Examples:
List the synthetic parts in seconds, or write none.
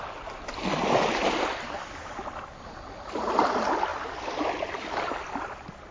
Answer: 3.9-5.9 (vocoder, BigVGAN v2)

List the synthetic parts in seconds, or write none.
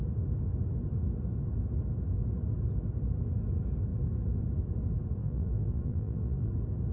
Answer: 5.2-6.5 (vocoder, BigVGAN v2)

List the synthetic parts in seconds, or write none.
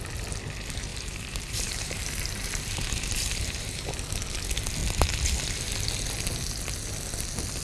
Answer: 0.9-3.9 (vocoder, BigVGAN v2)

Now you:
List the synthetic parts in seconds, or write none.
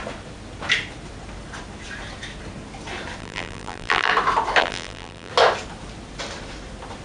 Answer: 3.2-4.1 (vocoder, BigVGAN v2); 4.6-5.3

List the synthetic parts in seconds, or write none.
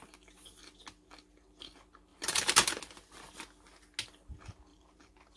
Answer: 2.1-2.8 (vocoder, BigVGAN v2); 4.7-5.4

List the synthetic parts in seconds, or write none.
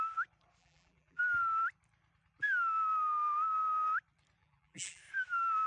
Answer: 0.6-1.2 (vocoder, BigVGAN v2); 4.4-5.0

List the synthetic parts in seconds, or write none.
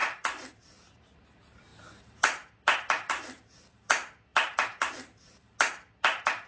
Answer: 0.0-0.5 (vocoder, BigVGAN v2); 1.7-3.1; 4.3-4.9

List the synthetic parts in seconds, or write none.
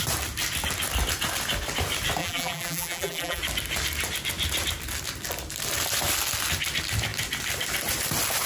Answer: 2.2-3.4 (vocoder, BigVGAN v2)